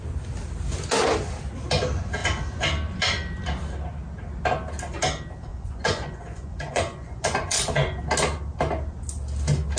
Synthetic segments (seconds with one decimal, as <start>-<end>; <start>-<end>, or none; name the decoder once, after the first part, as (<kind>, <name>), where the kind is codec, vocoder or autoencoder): 5.5-8.0 (vocoder, Vocos)